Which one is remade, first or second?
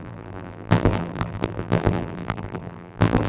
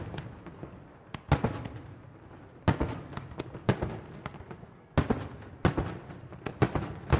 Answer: first